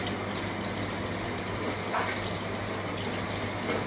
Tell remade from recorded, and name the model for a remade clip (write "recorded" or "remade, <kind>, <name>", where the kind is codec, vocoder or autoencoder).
recorded